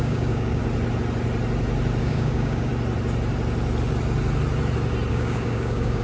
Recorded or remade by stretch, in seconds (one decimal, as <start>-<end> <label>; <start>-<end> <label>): 0.0-0.6 remade; 0.6-2.0 recorded; 2.0-2.7 remade; 2.7-5.1 recorded; 5.1-6.0 remade